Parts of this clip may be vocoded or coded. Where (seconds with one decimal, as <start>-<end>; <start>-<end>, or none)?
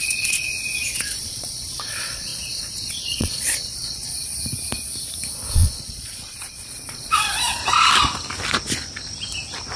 0.0-4.1; 5.5-7.6